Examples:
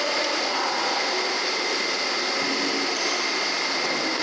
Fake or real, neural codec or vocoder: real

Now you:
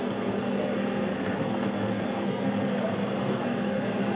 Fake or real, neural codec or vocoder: fake, codec, SNAC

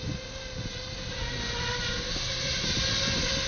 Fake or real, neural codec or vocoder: real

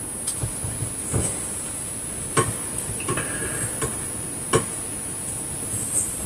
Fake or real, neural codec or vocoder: real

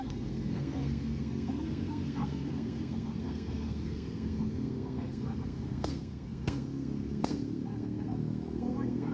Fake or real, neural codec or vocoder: fake, codec, SNAC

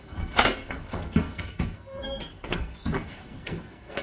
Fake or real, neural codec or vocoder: fake, codec, SNAC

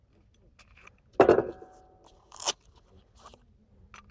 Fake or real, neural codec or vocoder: real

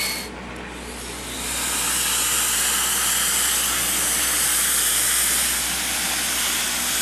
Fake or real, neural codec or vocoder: real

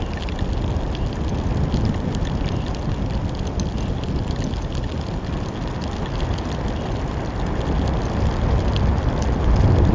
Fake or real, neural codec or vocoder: real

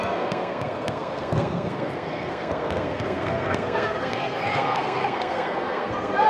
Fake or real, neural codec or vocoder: fake, codec, SNAC